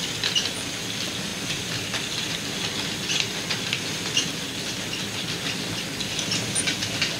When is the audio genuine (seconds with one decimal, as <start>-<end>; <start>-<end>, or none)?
0.0-7.2